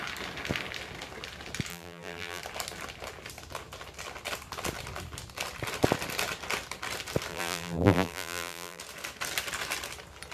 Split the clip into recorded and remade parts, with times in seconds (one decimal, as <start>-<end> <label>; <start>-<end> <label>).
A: 0.0-1.7 recorded; 1.7-2.4 remade; 2.4-7.3 recorded; 7.3-8.8 remade; 8.8-10.3 recorded